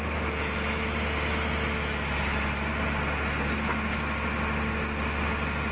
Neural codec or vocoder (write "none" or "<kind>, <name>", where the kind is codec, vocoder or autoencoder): none